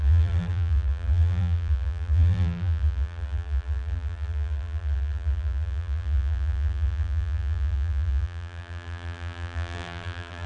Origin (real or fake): fake